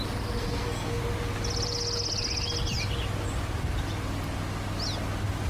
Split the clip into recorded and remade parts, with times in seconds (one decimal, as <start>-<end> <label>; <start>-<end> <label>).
0.0-0.4 recorded; 0.4-1.0 remade; 1.0-5.5 recorded